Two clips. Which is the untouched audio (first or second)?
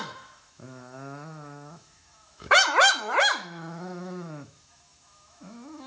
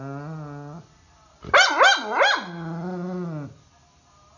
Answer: second